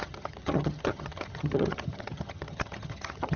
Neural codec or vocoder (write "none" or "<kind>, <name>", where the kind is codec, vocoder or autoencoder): vocoder, HiFi-GAN